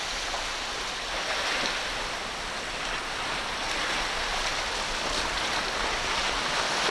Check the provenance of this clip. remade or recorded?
recorded